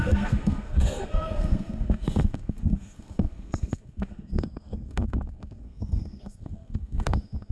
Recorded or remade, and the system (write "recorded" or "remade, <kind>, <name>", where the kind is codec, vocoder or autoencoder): remade, codec, SNAC